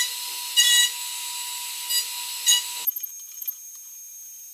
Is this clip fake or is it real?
real